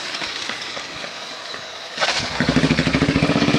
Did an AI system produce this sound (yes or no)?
yes